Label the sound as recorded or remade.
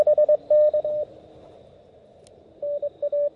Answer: recorded